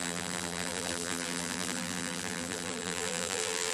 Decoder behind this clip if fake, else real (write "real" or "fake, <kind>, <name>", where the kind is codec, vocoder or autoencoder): fake, vocoder, BigVGAN v2